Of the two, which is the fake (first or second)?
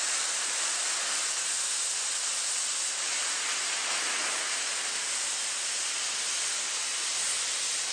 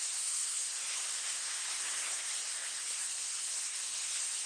second